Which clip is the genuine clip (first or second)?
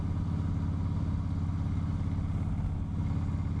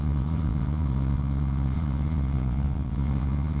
first